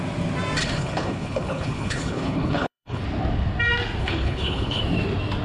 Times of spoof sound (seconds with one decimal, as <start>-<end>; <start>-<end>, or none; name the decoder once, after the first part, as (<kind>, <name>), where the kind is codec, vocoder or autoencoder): 0.6-3.0 (codec, HILCodec); 4.0-4.8

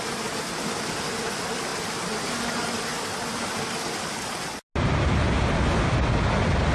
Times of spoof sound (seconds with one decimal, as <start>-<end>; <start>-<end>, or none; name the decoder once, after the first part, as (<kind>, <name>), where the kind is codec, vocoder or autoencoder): none